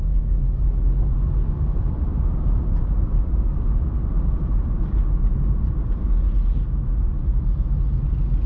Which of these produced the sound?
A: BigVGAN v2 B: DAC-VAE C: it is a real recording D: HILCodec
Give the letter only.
C